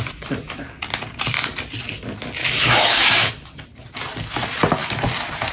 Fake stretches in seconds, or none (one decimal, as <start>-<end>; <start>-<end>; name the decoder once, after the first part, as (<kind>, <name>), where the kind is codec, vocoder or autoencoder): 2.4-3.3 (codec, DAC)